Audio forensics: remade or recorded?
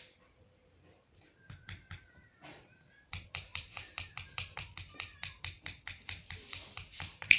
remade